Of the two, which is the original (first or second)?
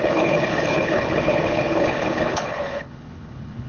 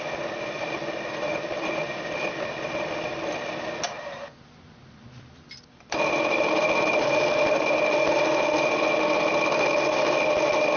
second